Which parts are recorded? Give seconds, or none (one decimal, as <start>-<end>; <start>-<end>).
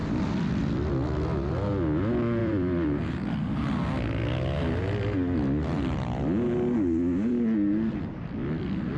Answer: 0.9-2.4; 3.0-9.0